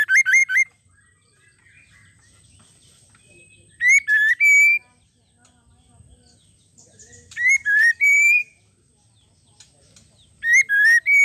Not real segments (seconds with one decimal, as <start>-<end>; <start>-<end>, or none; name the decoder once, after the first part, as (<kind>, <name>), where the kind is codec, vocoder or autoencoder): 0.4-1.6 (vocoder, BigVGAN v2); 6.7-8.5